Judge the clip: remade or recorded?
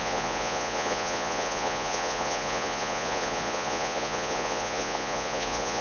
remade